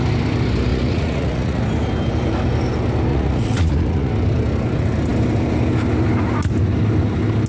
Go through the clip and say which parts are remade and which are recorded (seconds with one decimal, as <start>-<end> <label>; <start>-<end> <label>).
0.0-0.7 recorded; 0.7-1.6 remade; 1.6-3.1 recorded; 3.1-4.1 remade; 4.1-7.5 recorded